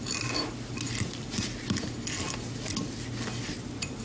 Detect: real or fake real